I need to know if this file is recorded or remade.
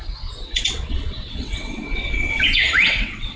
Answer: remade